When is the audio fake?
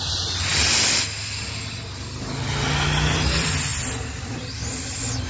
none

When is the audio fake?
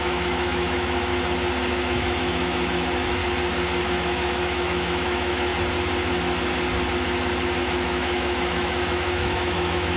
0.0-1.1 (autoencoder, DAC-VAE); 1.7-3.2; 3.8-5.5; 7.6-10.0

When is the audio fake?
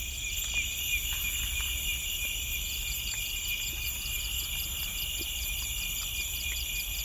none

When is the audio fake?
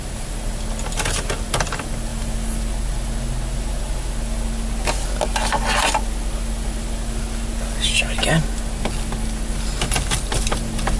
none